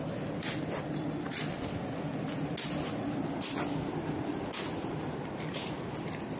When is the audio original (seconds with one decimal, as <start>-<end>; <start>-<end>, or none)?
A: 0.0-6.4